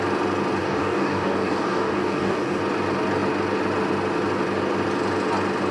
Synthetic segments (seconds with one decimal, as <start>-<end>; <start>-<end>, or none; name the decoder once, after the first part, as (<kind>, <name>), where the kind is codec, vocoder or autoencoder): 0.6-2.6 (codec, DAC)